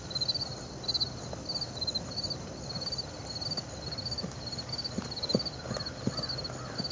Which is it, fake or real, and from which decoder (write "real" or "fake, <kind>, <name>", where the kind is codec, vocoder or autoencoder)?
real